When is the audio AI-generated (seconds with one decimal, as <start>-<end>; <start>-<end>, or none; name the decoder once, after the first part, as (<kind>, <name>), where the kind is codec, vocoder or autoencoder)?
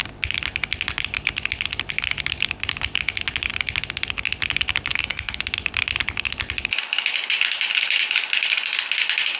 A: 4.9-5.4 (codec, SNAC)